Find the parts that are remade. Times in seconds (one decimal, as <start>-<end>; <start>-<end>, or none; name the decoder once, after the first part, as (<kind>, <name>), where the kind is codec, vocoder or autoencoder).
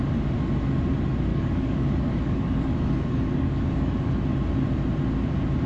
1.3-4.1 (codec, DAC)